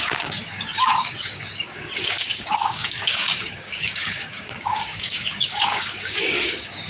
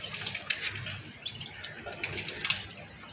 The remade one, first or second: first